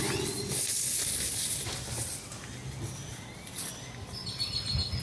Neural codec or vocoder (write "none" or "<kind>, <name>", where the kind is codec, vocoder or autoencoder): none